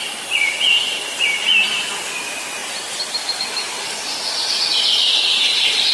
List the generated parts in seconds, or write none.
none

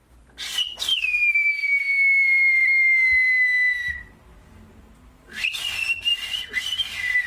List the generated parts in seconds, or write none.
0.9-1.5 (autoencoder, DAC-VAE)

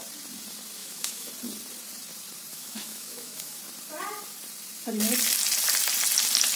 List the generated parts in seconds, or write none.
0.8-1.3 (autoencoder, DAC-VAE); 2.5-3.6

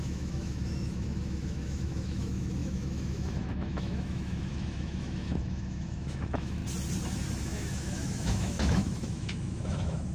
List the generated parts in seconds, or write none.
0.0-6.6 (autoencoder, DAC-VAE); 7.4-10.1

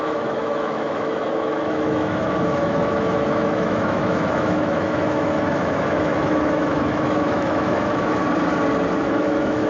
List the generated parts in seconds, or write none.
0.0-8.2 (autoencoder, DAC-VAE); 8.9-9.7

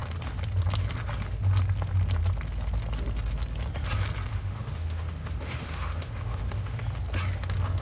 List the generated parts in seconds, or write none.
4.3-6.8 (autoencoder, DAC-VAE)